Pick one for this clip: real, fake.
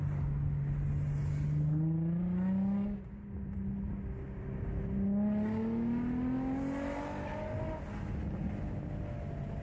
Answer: real